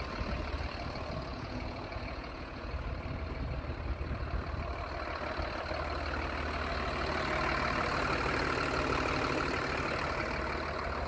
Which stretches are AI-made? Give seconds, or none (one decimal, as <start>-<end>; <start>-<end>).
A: 1.3-2.7